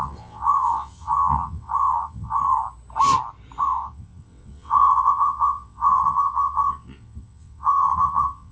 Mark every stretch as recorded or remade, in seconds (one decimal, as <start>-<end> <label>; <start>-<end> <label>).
0.0-2.5 remade; 2.5-3.6 recorded; 3.6-8.5 remade